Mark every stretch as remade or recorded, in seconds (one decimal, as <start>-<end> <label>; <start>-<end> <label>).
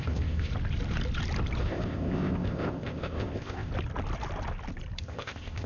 0.0-0.5 remade; 0.5-1.6 recorded; 1.6-3.7 remade; 3.7-5.0 recorded; 5.0-5.7 remade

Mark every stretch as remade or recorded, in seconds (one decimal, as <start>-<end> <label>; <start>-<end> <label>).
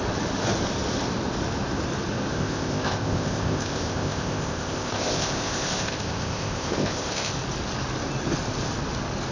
0.0-2.3 recorded; 2.3-7.3 remade; 7.3-9.3 recorded